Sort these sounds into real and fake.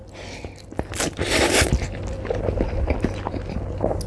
real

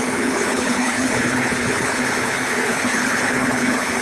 fake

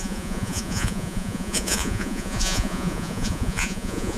fake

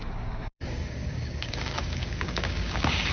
fake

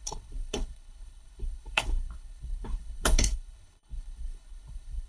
fake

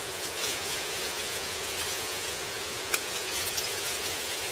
fake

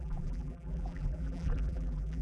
fake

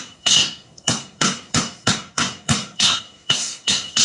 fake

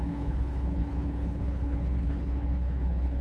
fake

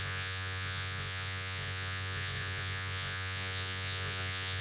fake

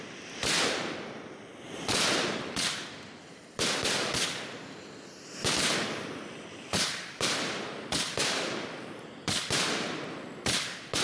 fake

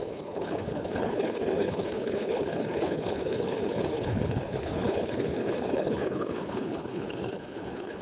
fake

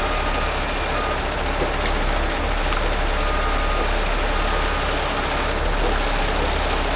real